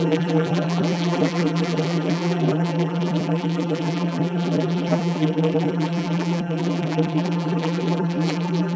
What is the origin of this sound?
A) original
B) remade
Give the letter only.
B